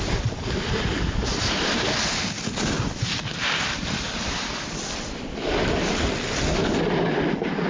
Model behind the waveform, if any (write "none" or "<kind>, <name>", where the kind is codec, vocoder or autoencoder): none